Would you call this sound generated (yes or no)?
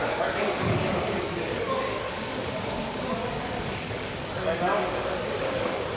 yes